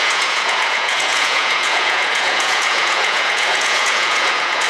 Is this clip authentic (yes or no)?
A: no